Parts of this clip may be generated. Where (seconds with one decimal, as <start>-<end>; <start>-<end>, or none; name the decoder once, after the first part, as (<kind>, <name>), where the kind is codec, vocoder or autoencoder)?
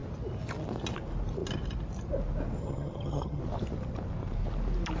2.6-3.4 (vocoder, HiFi-GAN)